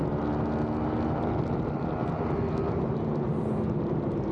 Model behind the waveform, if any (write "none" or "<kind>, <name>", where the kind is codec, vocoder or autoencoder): none